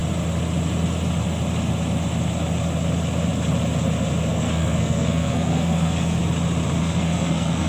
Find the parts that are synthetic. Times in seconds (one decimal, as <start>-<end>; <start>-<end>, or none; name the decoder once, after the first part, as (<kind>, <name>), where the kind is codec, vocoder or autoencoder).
4.3-6.2 (codec, SNAC); 6.8-7.7